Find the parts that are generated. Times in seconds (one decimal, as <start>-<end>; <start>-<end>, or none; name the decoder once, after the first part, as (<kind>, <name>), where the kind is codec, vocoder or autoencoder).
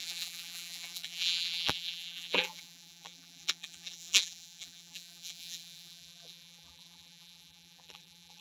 0.0-8.4 (vocoder, BigVGAN v2)